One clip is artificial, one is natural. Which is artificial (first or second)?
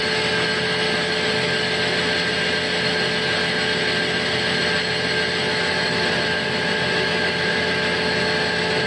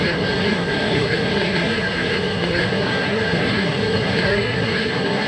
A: second